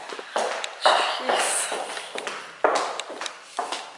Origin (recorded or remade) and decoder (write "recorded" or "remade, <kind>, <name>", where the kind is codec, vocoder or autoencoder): recorded